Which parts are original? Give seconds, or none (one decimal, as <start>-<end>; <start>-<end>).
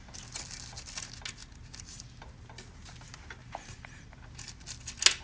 0.0-1.4; 2.2-3.4; 4.1-5.2